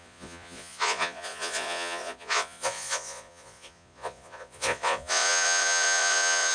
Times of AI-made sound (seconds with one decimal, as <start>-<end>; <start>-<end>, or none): 0.0-6.5